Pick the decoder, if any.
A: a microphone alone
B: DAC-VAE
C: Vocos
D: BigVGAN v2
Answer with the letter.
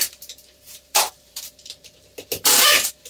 D